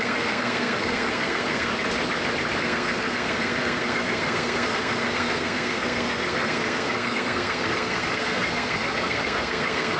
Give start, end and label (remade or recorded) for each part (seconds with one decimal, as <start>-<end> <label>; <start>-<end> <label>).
0.0-1.7 remade; 1.7-2.6 recorded; 2.6-10.0 remade